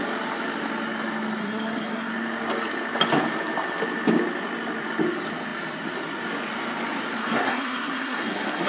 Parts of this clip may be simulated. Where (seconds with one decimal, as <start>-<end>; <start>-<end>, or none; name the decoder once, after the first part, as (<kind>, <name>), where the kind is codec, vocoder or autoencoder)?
1.4-2.1 (codec, SNAC); 7.2-8.7